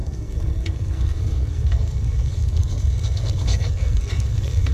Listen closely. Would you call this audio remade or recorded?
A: remade